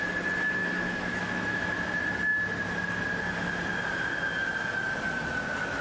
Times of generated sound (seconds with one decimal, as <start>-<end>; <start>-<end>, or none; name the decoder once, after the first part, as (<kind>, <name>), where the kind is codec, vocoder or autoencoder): 0.6-1.8 (autoencoder, DAC-VAE)